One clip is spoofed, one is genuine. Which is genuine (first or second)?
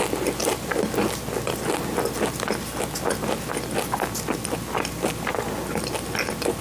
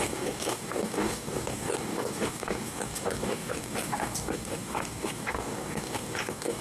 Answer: first